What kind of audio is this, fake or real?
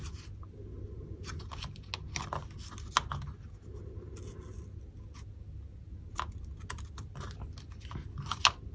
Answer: real